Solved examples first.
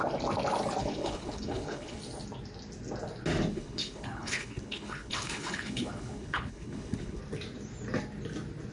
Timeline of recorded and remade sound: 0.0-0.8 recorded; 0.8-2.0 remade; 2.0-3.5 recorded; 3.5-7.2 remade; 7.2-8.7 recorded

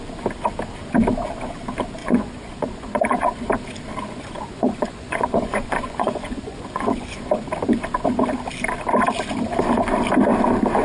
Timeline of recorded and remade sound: 0.0-2.0 recorded; 2.0-3.5 remade; 3.5-3.9 recorded; 3.9-7.3 remade; 7.3-10.8 recorded

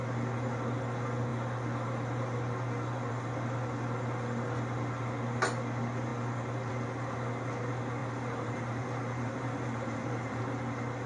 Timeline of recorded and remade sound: 0.0-8.0 recorded; 8.0-10.4 remade; 10.4-11.1 recorded